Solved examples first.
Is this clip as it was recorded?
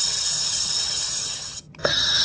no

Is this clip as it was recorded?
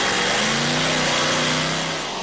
yes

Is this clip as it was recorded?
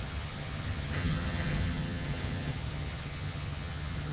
no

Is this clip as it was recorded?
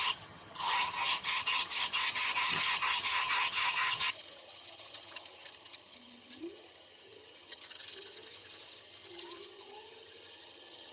no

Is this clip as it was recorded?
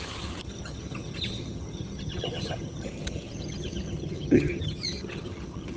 no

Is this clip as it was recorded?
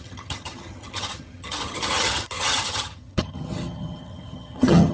no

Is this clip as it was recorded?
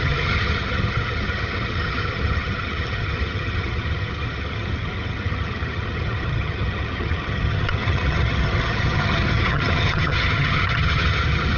no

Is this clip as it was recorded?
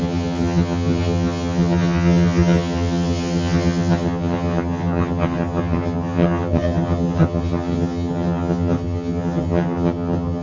no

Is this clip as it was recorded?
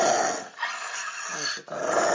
yes